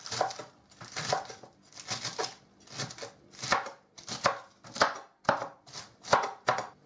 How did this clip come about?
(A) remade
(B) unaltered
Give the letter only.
B